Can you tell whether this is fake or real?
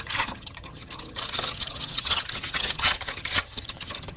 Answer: fake